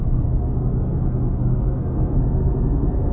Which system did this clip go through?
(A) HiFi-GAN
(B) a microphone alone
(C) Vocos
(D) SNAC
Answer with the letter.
D